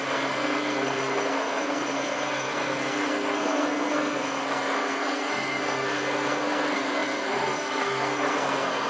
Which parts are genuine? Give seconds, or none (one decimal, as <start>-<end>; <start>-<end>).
none